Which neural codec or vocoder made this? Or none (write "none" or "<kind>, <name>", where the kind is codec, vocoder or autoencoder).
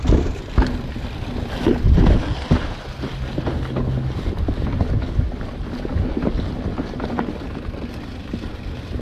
none